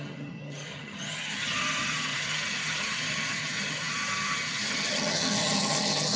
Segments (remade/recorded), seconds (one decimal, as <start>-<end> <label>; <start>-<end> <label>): 0.0-6.2 remade